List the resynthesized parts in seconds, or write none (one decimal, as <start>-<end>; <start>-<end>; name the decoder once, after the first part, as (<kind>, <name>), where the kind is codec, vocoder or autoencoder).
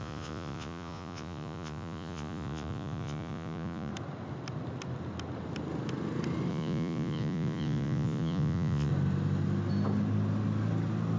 0.0-3.9 (vocoder, Vocos); 6.5-8.9